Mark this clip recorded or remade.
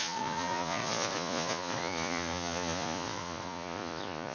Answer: remade